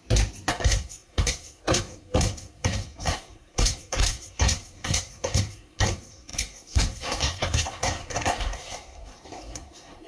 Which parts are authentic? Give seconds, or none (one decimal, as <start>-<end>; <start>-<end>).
0.0-0.5